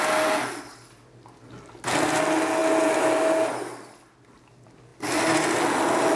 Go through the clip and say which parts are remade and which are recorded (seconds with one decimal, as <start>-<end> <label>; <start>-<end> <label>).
0.0-6.2 recorded